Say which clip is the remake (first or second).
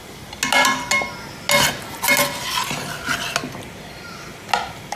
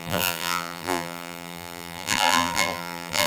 second